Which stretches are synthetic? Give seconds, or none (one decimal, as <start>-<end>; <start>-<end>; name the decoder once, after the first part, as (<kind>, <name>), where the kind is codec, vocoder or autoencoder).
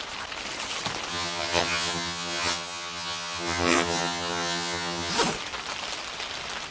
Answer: 1.1-5.1 (vocoder, HiFi-GAN)